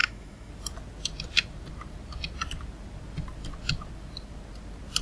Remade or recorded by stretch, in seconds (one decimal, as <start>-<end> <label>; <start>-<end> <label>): 0.0-0.5 remade; 0.5-5.0 recorded